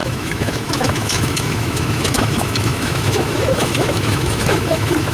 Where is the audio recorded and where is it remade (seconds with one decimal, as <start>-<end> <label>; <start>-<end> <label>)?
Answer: 0.0-5.1 remade